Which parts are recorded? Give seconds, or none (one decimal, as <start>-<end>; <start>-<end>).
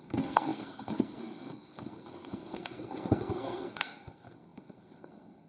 none